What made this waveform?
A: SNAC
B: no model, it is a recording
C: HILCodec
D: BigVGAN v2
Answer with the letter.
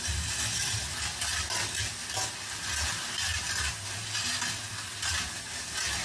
B